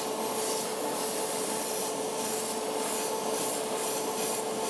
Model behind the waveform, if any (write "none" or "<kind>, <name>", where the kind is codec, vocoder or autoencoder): none